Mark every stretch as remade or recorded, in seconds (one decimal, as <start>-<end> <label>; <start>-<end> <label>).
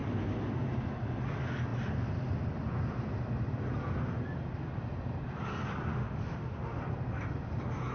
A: 0.0-5.9 recorded; 5.9-6.8 remade; 6.8-7.9 recorded